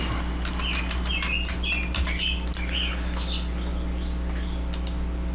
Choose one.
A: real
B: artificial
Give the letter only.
A